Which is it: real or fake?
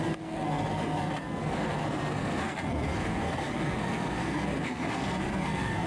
fake